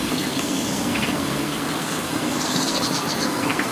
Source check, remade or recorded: remade